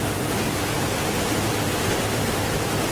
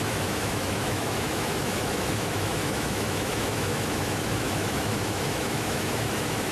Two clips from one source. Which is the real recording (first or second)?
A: first